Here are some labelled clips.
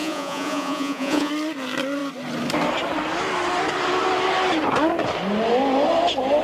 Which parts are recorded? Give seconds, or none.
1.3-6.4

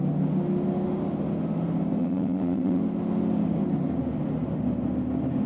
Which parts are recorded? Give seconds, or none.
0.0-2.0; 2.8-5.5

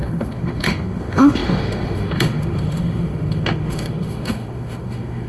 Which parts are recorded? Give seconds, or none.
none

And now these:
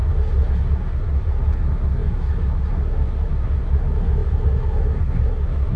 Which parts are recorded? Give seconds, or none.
none